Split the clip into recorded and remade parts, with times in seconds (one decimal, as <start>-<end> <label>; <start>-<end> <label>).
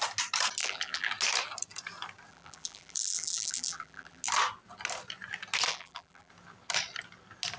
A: 0.0-0.6 recorded; 0.6-1.1 remade; 1.1-2.3 recorded; 2.3-4.2 remade; 4.2-5.7 recorded; 5.7-6.3 remade; 6.3-7.6 recorded